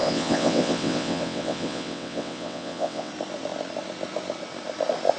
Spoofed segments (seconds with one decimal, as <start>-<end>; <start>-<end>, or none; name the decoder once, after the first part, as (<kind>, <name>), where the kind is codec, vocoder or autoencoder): 0.0-3.1 (vocoder, WaveNeXt)